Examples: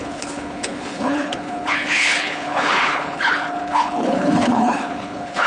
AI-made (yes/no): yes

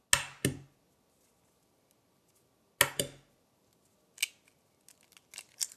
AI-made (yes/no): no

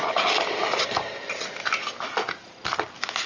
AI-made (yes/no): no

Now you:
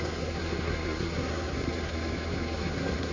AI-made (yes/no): yes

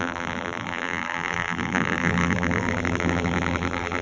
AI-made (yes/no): yes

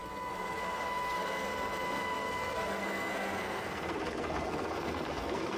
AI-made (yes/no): yes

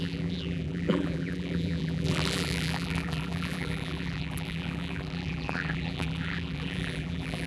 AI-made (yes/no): yes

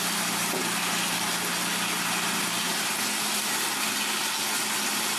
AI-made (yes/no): no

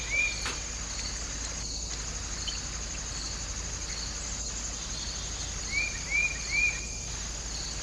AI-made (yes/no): no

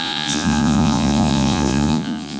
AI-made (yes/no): yes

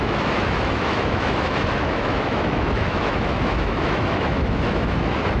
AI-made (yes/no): yes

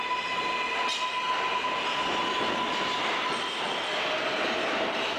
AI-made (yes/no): no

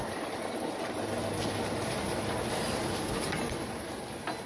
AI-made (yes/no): no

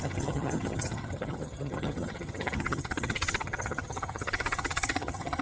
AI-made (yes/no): yes